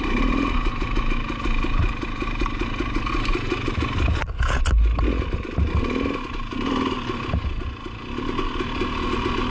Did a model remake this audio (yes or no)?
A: no